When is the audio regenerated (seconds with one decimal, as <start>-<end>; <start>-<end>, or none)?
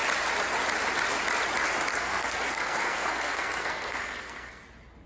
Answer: 1.9-4.6